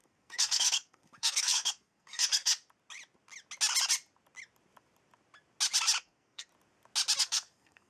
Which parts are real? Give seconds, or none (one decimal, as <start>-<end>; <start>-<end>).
2.5-6.0; 6.5-7.2